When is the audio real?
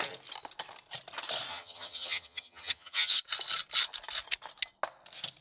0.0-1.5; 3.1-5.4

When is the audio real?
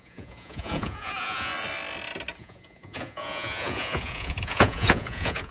1.5-2.4